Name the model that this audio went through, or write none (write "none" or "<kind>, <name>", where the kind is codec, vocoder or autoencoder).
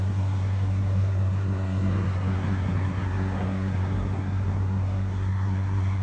codec, SNAC